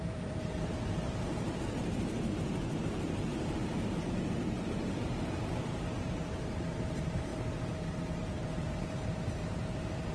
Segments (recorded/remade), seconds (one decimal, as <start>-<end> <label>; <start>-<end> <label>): 0.0-7.3 remade; 7.3-8.2 recorded; 8.2-10.1 remade